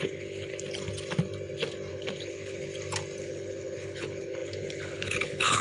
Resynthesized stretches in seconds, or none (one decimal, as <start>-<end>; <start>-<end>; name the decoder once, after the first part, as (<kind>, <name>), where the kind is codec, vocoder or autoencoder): 0.0-0.5 (codec, HILCodec); 1.9-2.7; 3.2-5.6